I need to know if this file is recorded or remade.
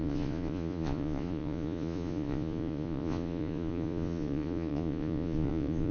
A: remade